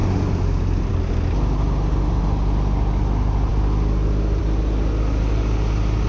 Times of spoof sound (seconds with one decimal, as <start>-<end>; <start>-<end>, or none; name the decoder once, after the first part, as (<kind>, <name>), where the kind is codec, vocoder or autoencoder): 0.0-0.9 (vocoder, BigVGAN v2)